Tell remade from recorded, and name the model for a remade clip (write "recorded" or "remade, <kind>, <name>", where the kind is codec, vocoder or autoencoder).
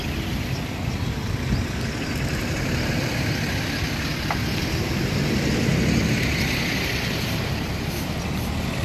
recorded